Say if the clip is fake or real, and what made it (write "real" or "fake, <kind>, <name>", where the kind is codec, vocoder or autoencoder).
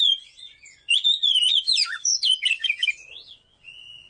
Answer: fake, vocoder, Vocos